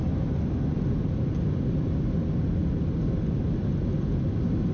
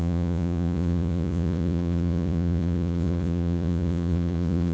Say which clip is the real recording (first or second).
first